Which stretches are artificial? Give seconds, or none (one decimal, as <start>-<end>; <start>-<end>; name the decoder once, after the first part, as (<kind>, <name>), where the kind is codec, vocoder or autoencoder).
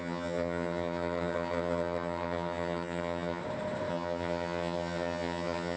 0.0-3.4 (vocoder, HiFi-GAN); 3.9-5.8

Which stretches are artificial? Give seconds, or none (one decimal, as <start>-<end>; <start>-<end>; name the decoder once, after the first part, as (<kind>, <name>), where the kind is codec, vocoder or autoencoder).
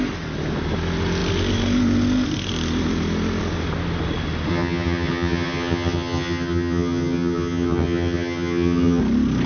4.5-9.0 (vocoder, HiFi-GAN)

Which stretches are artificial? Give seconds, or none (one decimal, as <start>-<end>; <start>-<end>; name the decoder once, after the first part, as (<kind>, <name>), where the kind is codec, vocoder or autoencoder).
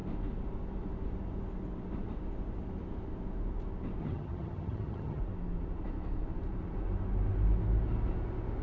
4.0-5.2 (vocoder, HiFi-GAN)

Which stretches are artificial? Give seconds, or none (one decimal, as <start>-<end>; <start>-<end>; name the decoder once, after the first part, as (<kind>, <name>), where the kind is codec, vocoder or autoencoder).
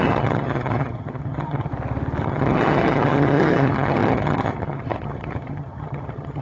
0.0-1.7 (vocoder, HiFi-GAN); 2.2-6.4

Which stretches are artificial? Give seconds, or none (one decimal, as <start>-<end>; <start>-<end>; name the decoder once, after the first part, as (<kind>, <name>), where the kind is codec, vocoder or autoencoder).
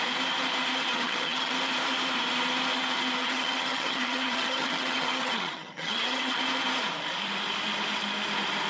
0.9-1.5 (vocoder, HiFi-GAN); 3.2-6.4